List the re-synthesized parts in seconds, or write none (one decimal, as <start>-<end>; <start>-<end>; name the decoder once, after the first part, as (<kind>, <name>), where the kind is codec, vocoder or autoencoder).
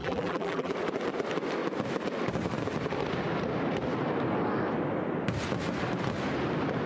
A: 0.0-0.7 (vocoder, BigVGAN v2)